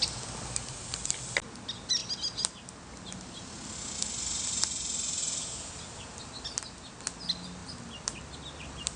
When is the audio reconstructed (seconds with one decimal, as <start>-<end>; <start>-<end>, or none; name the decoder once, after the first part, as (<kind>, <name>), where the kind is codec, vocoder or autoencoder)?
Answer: none